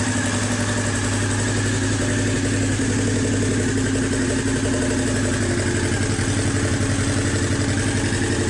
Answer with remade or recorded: recorded